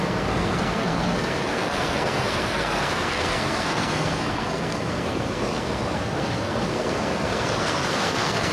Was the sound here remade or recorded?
remade